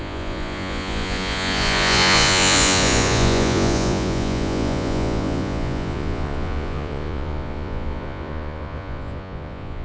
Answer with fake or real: fake